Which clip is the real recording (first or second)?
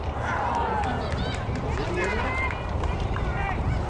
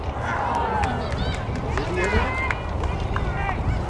second